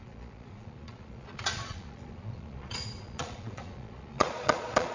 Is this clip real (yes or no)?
no